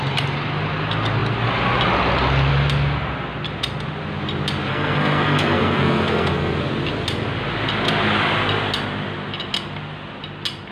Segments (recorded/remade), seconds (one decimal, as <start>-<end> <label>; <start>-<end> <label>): 0.0-4.7 recorded; 4.7-6.5 remade; 6.5-10.7 recorded